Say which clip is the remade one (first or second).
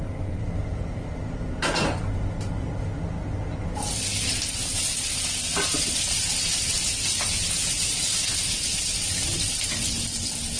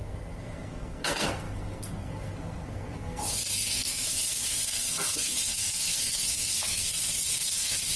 second